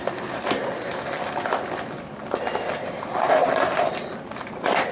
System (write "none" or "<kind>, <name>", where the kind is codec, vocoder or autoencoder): none